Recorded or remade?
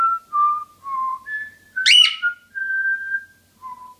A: recorded